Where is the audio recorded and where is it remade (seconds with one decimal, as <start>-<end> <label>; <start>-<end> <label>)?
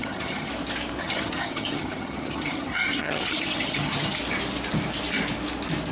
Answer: 0.0-0.5 remade; 0.5-1.0 recorded; 1.0-4.2 remade; 4.2-5.9 recorded